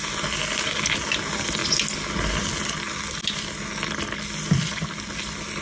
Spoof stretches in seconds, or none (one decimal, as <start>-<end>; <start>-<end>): none